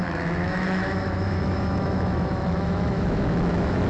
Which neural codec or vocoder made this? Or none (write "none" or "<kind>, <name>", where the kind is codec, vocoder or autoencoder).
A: autoencoder, DAC-VAE